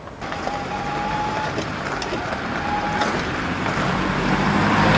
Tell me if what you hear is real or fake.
real